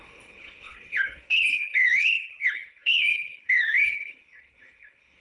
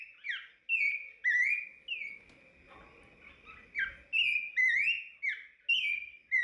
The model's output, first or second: first